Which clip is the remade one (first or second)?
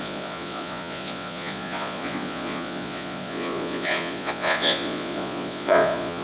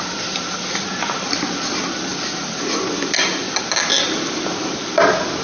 first